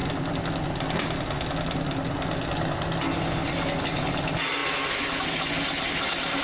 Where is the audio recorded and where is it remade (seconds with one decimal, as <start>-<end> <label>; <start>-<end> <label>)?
0.0-6.4 recorded